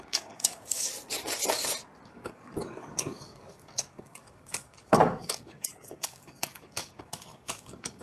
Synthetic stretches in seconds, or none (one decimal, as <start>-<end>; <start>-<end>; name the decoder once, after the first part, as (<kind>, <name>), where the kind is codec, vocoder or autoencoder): 0.0-0.9 (codec, DAC); 2.1-8.0

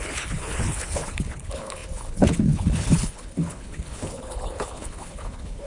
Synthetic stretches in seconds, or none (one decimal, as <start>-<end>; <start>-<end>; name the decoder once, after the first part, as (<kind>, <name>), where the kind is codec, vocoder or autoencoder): 0.0-5.7 (codec, HILCodec)

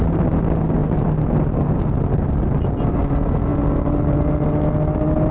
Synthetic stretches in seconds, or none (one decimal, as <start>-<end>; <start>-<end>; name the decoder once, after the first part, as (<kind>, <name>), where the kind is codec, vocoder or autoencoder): none

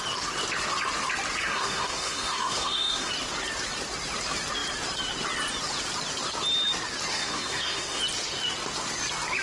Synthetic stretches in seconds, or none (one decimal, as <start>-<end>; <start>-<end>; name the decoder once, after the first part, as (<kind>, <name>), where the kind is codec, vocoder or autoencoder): 1.4-3.1 (codec, SNAC); 7.1-8.0

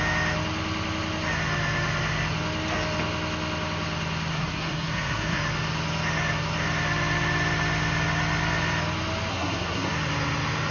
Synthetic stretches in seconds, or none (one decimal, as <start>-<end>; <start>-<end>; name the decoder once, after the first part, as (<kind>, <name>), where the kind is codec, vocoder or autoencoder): 4.3-5.4 (codec, SNAC); 9.3-9.9

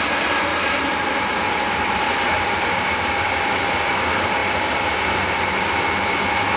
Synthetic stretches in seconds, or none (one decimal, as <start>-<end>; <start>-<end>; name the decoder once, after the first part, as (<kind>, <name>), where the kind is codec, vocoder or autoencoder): 0.5-3.3 (vocoder, BigVGAN v2)

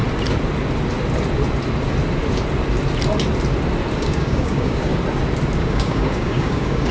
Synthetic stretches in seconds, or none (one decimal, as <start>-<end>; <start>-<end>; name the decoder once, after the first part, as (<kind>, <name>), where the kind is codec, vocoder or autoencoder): 4.0-4.9 (codec, DAC); 5.6-6.9

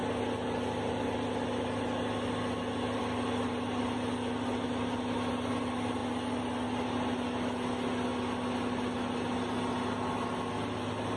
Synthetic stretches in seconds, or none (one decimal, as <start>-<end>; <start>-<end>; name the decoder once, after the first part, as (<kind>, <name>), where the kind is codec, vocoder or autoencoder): none